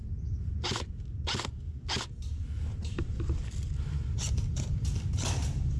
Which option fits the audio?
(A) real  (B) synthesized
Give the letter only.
A